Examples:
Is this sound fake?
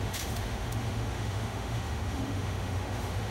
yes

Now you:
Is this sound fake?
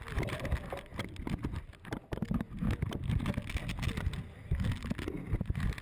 no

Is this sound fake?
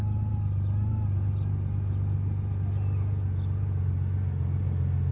no